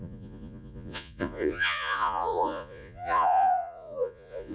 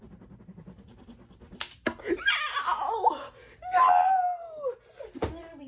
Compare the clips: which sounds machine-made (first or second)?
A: first